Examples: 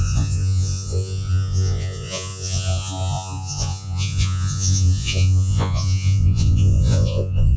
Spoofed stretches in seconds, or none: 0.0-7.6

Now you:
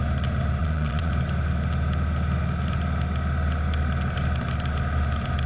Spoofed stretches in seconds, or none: 0.6-1.1